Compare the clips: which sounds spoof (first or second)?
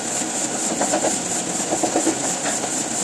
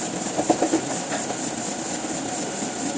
second